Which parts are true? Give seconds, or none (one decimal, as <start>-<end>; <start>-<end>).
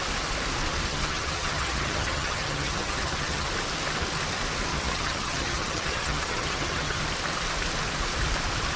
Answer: 0.0-0.9; 3.5-4.7; 7.0-8.8